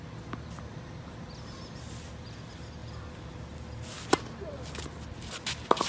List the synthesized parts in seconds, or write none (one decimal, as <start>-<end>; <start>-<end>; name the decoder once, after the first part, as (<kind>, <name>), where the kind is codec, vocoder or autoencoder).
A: none